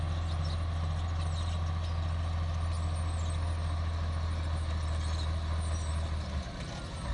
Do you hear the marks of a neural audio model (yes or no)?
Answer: no